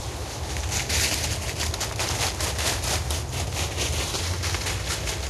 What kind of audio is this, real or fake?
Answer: real